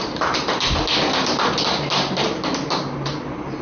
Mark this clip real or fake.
real